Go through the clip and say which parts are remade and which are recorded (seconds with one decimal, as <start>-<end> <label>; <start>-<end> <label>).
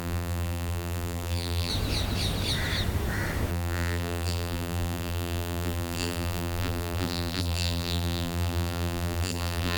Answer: 0.0-1.7 remade; 1.7-3.5 recorded; 3.5-9.8 remade